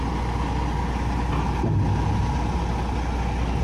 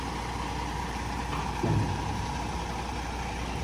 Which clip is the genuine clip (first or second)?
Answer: first